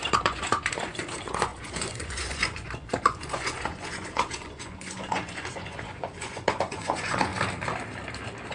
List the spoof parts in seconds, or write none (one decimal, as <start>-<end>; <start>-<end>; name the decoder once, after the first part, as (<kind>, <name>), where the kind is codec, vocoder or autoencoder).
0.0-7.3 (vocoder, Vocos)